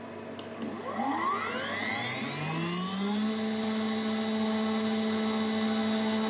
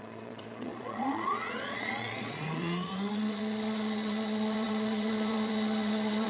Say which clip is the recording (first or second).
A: first